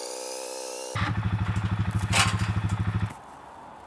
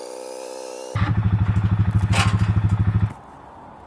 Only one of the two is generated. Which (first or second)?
first